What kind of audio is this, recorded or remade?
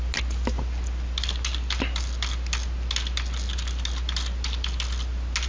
recorded